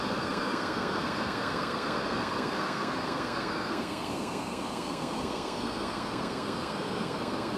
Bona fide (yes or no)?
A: no